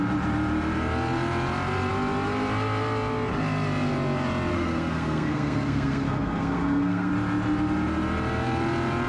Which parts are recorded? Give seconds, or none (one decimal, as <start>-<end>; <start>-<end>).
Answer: 0.0-4.5; 7.1-9.1